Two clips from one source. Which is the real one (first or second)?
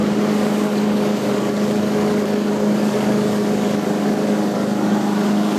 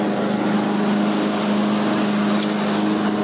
second